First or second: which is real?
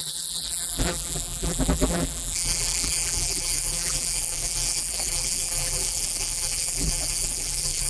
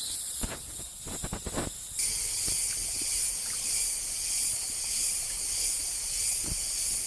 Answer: second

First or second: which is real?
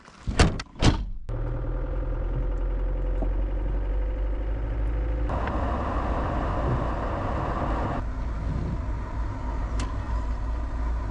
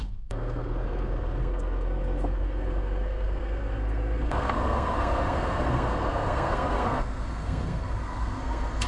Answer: first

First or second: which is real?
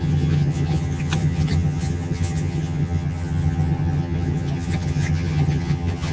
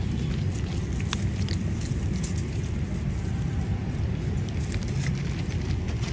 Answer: second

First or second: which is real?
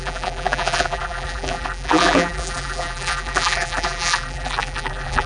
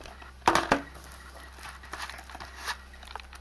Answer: second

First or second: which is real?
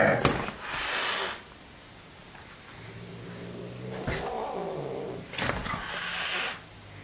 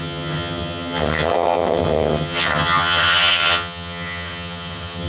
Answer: first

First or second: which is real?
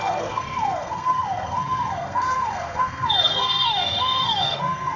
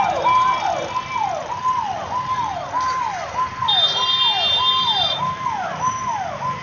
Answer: second